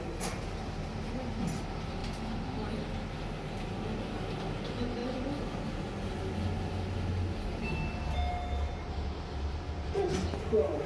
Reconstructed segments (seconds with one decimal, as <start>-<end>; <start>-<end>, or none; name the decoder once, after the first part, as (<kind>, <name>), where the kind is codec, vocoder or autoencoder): none